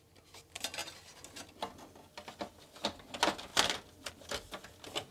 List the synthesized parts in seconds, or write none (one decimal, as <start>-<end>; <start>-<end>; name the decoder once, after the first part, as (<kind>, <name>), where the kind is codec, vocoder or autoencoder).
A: none